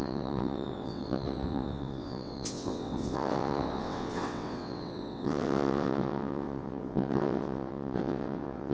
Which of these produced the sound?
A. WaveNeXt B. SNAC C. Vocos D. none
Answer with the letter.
A